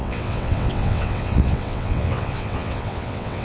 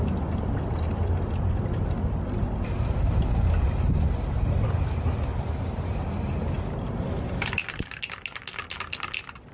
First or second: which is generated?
first